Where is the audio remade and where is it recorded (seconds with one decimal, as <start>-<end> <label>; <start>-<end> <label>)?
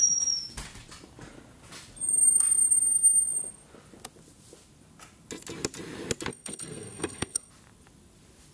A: 0.0-6.3 recorded; 6.3-7.5 remade; 7.5-8.5 recorded